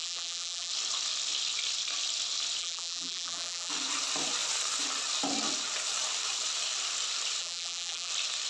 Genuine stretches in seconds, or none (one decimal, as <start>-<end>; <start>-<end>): 0.7-2.6; 3.7-7.4; 8.1-8.5